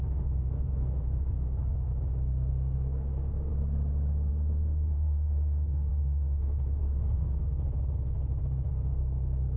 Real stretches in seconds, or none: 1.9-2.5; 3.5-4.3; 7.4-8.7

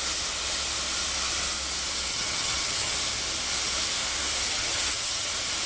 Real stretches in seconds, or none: 0.0-2.1; 2.9-4.5; 5.3-5.7

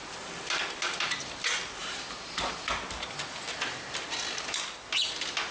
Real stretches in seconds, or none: 0.0-5.5